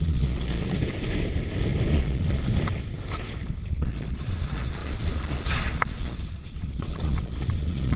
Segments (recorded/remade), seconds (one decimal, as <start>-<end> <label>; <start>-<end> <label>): 0.0-0.6 remade; 0.6-1.9 recorded; 1.9-2.4 remade; 2.4-3.7 recorded; 3.7-8.0 remade